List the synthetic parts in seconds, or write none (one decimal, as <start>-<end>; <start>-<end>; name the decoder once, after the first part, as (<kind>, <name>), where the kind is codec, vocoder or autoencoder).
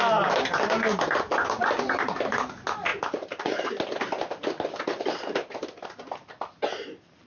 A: 2.9-3.7 (vocoder, BigVGAN v2)